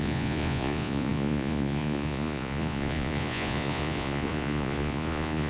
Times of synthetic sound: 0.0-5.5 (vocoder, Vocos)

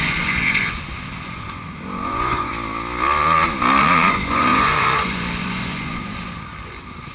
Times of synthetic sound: 0.0-2.5 (vocoder, Vocos); 3.8-7.1